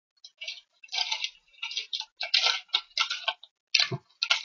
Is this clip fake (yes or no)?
no